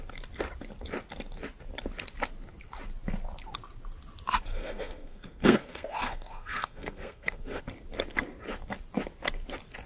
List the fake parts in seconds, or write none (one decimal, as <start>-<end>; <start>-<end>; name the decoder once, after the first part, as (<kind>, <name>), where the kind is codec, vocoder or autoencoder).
4.5-7.6 (codec, SNAC)